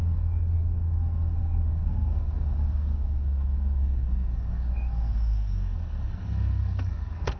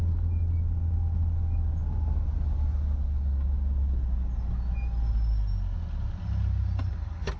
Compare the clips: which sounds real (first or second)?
second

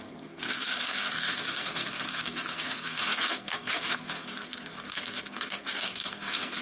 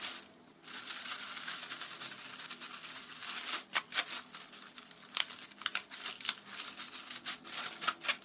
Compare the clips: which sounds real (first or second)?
second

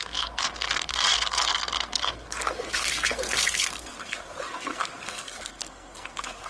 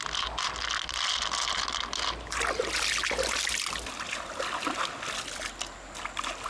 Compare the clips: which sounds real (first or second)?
second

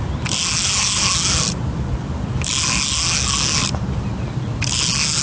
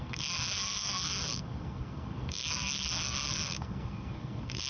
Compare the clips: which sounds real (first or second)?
first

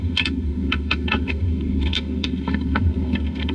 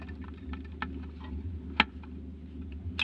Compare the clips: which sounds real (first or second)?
second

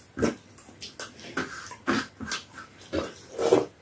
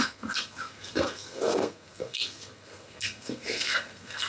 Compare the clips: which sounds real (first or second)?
first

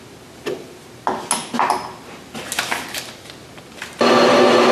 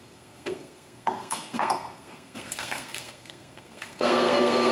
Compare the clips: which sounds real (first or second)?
first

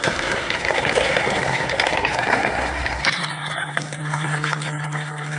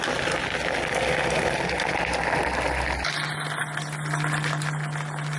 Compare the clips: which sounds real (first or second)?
second